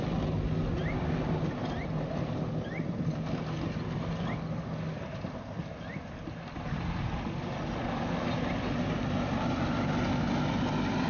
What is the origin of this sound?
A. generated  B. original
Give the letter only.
B